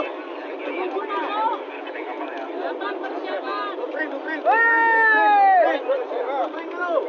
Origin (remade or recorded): recorded